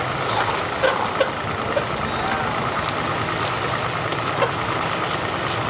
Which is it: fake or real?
real